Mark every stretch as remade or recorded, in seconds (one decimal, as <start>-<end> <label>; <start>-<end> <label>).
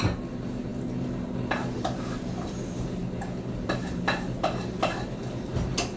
0.0-6.0 recorded